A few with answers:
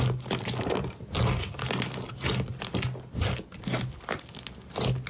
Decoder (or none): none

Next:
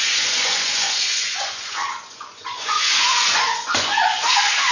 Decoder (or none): vocoder, Vocos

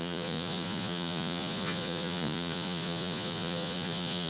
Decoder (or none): vocoder, Vocos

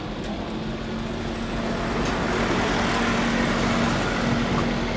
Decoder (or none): none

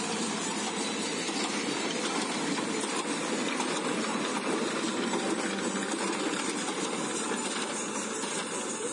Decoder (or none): none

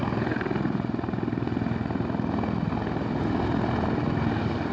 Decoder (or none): none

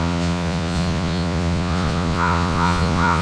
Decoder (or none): vocoder, Vocos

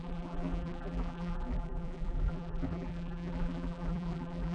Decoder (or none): vocoder, BigVGAN v2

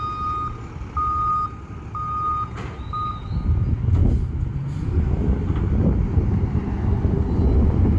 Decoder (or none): none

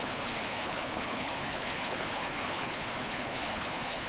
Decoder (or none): codec, HILCodec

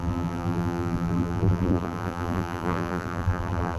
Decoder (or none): vocoder, BigVGAN v2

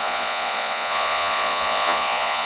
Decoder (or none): vocoder, Vocos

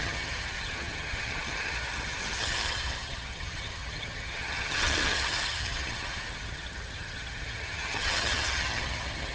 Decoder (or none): vocoder, HiFi-GAN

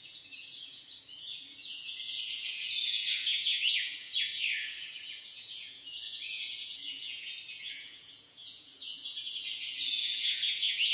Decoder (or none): vocoder, Vocos